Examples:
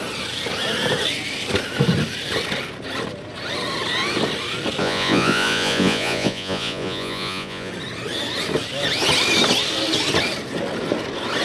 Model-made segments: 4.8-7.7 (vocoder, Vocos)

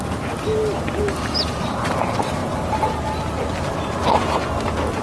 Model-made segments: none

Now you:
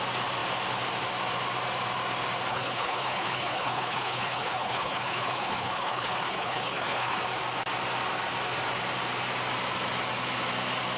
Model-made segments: 2.5-7.2 (codec, HILCodec)

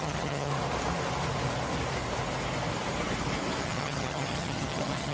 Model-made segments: 0.0-0.5 (vocoder, HiFi-GAN); 3.6-5.1

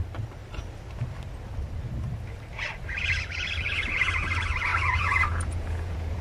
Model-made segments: 4.7-6.2 (vocoder, Vocos)

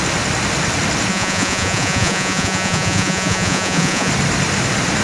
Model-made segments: 1.1-4.1 (vocoder, Vocos)